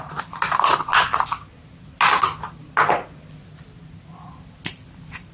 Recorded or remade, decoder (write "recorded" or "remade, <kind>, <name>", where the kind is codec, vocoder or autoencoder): recorded